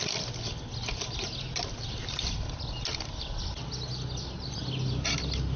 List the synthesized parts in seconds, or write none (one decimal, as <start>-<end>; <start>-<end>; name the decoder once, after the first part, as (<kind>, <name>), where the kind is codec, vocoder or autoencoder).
none